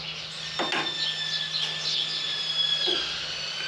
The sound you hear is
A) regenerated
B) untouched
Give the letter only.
B